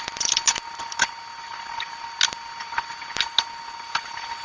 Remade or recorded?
recorded